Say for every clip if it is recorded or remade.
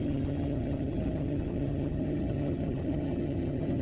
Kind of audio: remade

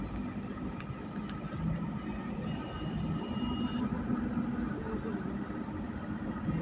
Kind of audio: recorded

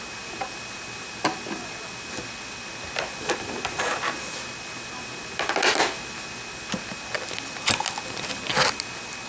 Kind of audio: recorded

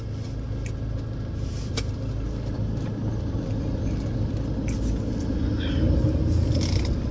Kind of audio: recorded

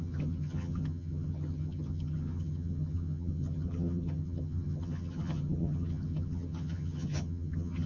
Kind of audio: remade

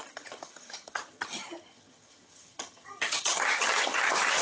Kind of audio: remade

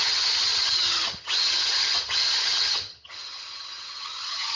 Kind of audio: remade